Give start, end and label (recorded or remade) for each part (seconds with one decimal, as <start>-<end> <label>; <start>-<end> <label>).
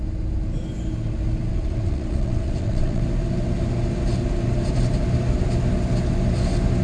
0.0-1.5 recorded; 1.5-3.0 remade; 3.0-6.8 recorded